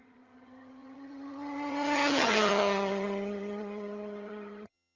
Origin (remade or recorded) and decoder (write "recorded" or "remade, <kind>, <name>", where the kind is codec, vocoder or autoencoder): remade, vocoder, HiFi-GAN